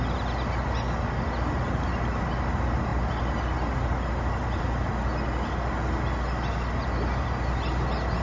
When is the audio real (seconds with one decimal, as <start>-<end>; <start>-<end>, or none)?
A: 0.0-8.2